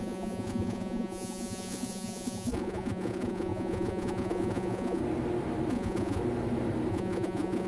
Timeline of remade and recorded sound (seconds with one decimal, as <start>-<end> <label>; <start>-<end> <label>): 0.0-5.0 remade; 5.0-5.7 recorded; 5.7-6.2 remade; 6.2-6.9 recorded; 6.9-7.7 remade

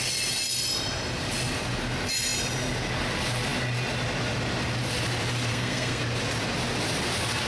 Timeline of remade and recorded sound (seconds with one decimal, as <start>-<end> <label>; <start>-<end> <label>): 0.0-5.5 recorded; 5.5-6.0 remade; 6.0-7.5 recorded

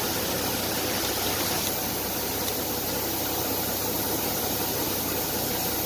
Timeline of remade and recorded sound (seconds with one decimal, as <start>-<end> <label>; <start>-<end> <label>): 0.0-1.8 recorded; 1.8-2.5 remade; 2.5-5.9 recorded

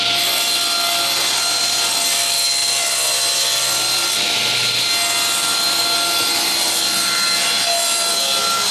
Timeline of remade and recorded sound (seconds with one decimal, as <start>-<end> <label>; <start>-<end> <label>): 0.0-8.7 recorded